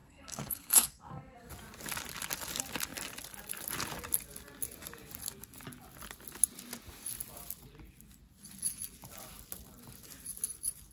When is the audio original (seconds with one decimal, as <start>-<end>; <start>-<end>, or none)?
1.5-10.9